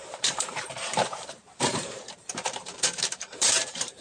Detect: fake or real fake